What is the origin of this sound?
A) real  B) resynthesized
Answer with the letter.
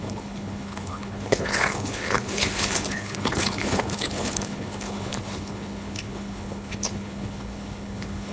B